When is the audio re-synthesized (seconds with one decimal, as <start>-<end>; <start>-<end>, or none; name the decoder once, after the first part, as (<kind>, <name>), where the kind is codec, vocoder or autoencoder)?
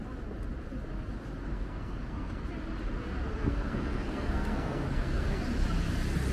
1.5-2.4 (codec, SNAC); 3.3-5.4